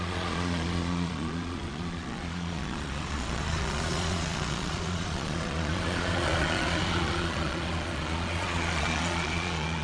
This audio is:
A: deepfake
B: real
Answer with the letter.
A